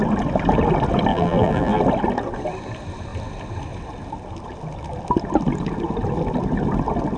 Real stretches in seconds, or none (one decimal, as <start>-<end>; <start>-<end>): 0.0-1.1; 1.8-7.2